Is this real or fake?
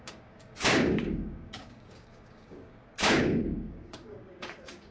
fake